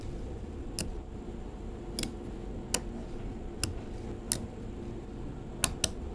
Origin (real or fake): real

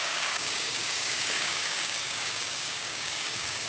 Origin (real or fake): fake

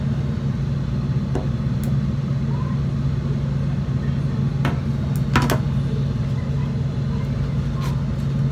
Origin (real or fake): real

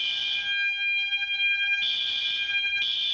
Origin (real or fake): real